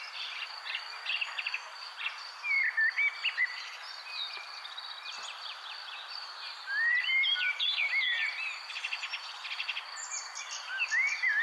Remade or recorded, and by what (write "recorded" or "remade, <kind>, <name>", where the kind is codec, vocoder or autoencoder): remade, vocoder, BigVGAN v2